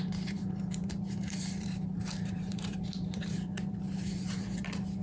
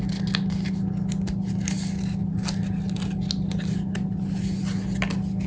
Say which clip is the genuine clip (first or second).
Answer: second